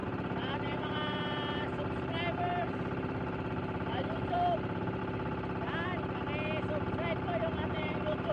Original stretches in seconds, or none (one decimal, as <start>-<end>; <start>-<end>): 5.0-7.7